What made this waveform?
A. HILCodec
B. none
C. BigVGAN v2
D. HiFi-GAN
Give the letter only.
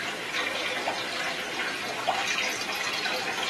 B